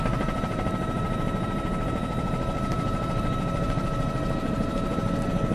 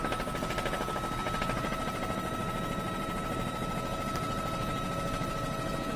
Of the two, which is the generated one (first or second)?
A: first